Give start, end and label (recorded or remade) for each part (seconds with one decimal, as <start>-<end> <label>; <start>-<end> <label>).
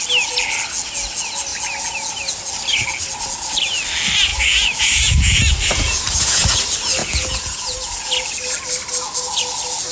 0.0-4.3 recorded; 4.3-6.6 remade; 6.6-7.0 recorded; 7.0-8.1 remade; 8.1-9.9 recorded